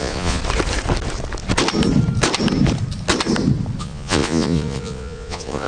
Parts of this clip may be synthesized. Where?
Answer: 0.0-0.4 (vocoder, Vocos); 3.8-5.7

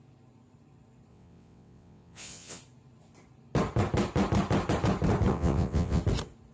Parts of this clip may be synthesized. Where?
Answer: 1.1-2.6 (vocoder, WaveNeXt); 5.3-6.0

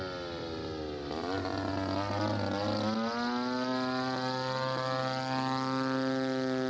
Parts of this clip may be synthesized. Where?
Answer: none

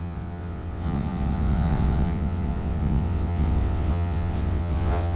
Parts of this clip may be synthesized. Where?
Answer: 0.0-5.2 (vocoder, WaveNeXt)

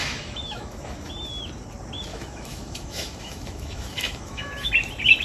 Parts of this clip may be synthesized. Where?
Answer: 0.0-1.1 (autoencoder, DAC-VAE); 2.1-4.7

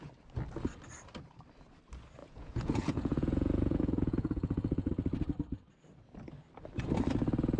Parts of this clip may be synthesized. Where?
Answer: 2.2-4.9 (vocoder, Vocos)

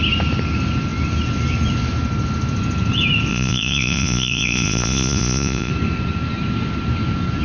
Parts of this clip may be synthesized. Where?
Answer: 3.3-5.7 (vocoder, Vocos)

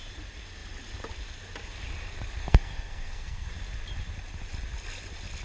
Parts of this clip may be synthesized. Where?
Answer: 2.4-3.5 (codec, SNAC)